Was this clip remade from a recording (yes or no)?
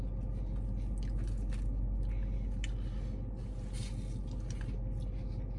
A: no